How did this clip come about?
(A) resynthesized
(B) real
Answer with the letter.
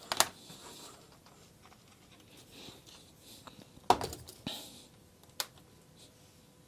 B